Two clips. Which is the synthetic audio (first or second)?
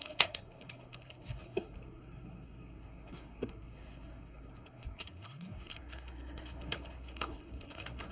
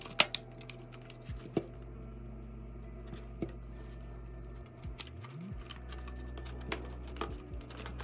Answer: first